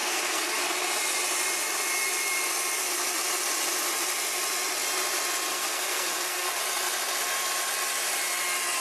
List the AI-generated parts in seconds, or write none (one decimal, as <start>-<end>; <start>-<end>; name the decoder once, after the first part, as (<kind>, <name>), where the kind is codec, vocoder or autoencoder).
0.0-0.6 (codec, SNAC); 5.5-6.6